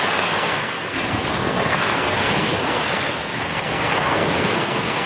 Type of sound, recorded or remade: remade